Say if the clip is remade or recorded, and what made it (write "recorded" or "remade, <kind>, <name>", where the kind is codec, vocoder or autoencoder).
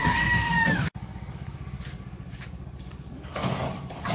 remade, codec, DAC